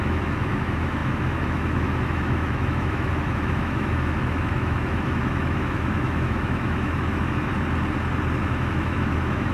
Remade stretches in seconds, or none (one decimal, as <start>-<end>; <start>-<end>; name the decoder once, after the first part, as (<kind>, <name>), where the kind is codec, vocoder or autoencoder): 0.0-7.5 (autoencoder, DAC-VAE); 8.4-9.5

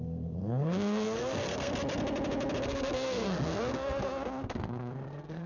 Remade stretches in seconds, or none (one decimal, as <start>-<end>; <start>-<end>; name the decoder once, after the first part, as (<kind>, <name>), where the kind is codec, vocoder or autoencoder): 0.0-1.7 (codec, SNAC); 2.6-5.5

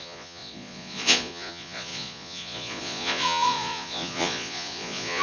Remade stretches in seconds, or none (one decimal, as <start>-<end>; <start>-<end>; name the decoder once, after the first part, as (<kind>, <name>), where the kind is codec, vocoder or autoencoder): 0.0-5.2 (vocoder, Vocos)